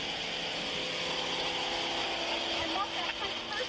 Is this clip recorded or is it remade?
recorded